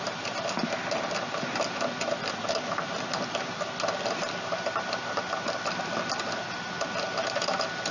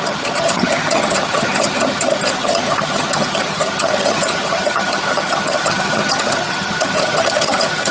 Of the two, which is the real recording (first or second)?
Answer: first